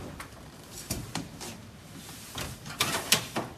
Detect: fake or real fake